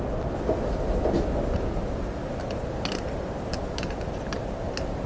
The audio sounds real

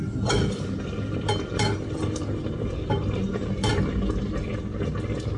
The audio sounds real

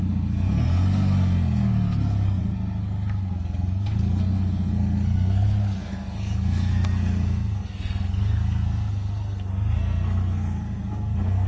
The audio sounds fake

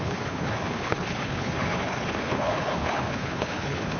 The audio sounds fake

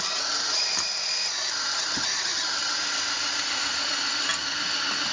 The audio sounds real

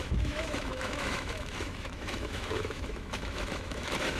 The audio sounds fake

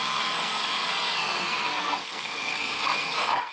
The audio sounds fake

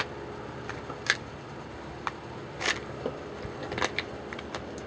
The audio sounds real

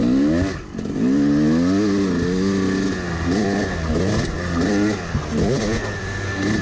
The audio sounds real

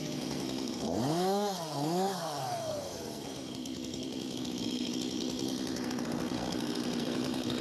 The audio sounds fake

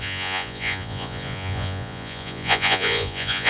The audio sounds fake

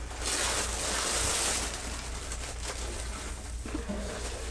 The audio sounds real